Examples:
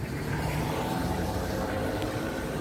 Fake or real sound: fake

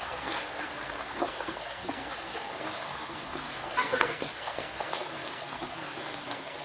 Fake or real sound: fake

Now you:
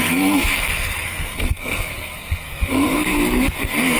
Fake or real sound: fake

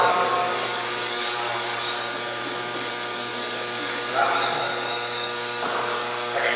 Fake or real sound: fake